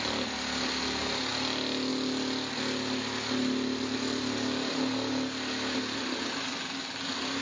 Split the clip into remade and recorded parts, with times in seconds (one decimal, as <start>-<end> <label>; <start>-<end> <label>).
0.0-7.4 recorded